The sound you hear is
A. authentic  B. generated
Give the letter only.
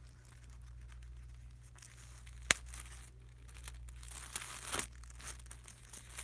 A